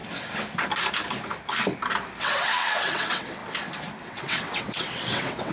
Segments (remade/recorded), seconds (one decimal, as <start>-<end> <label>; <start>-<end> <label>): 0.0-2.2 recorded; 2.2-3.4 remade; 3.4-4.0 recorded; 4.0-5.5 remade